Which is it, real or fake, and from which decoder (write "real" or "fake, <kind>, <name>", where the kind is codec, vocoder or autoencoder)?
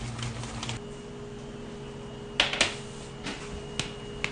real